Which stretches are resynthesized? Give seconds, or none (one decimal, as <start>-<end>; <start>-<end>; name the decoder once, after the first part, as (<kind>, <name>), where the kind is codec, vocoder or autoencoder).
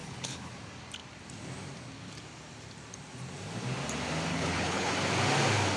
0.0-0.5 (codec, HILCodec); 4.3-4.9